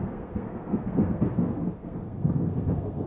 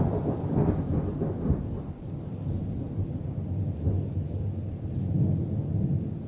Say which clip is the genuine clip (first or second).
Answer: second